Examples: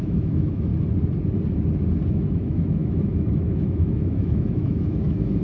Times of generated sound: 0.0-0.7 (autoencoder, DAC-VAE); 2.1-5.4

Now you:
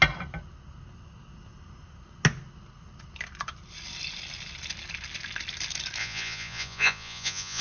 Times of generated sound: 6.0-7.6 (vocoder, Vocos)